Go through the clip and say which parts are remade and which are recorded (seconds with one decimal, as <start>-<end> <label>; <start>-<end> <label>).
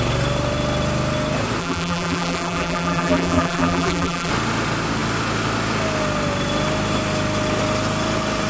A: 0.0-1.6 recorded; 1.6-4.3 remade; 4.3-8.5 recorded